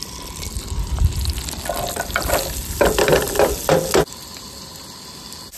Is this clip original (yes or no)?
yes